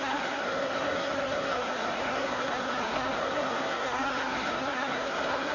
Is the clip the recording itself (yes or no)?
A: no